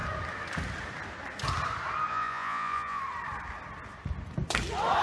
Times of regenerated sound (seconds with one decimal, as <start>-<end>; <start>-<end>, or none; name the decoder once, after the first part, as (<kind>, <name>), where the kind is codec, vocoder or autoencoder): 2.1-3.0 (vocoder, Vocos)